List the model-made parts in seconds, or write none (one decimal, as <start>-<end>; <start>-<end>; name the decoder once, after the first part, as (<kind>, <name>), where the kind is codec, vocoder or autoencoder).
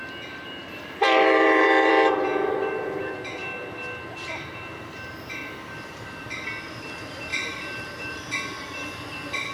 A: 0.6-1.9 (vocoder, BigVGAN v2); 7.3-8.2